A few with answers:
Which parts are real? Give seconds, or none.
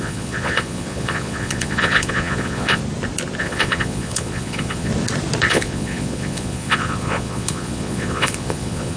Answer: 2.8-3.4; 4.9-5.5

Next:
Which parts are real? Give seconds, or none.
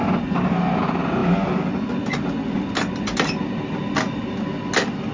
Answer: 0.0-5.1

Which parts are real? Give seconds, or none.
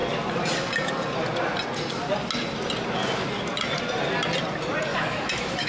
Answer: 0.0-4.9